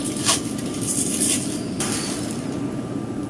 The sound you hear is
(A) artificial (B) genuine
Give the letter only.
B